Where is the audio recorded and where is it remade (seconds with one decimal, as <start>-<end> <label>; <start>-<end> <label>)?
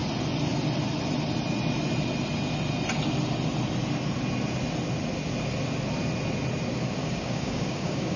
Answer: 0.0-7.0 recorded; 7.0-8.2 remade